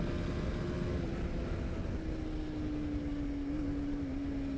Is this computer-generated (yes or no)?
no